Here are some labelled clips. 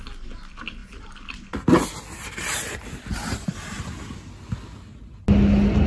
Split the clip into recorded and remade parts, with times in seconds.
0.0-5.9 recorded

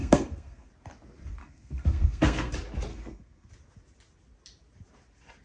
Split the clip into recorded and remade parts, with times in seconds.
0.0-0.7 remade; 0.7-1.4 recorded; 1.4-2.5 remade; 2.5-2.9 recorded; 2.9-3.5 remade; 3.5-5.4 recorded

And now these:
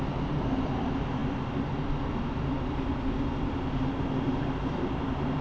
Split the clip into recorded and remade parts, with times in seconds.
0.0-5.4 recorded

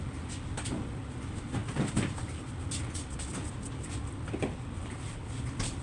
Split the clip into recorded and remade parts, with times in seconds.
0.0-5.8 recorded